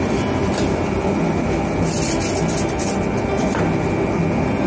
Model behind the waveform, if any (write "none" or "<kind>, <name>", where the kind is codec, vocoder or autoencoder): none